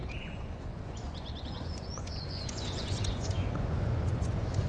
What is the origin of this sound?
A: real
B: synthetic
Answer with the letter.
B